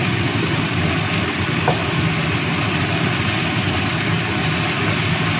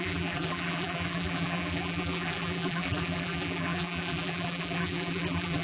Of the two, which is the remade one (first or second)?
second